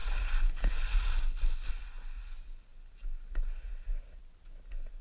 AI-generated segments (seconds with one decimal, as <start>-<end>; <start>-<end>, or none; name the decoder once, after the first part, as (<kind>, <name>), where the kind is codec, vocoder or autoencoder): none